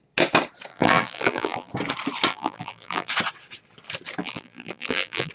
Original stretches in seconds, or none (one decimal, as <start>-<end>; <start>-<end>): 0.0-0.7; 1.7-2.3; 3.1-4.2